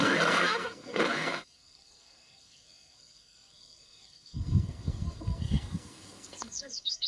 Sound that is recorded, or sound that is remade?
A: remade